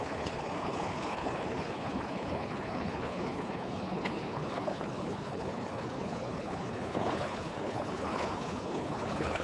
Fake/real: fake